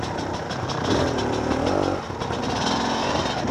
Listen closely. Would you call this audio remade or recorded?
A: recorded